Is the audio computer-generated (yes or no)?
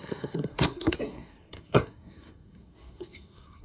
yes